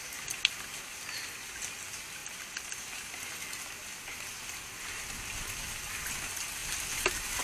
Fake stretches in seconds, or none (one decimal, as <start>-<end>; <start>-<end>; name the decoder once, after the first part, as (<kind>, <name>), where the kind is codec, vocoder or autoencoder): none